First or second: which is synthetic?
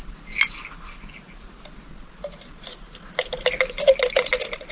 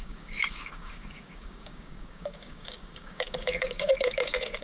second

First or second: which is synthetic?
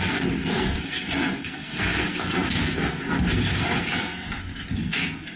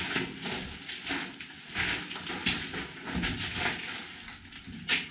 first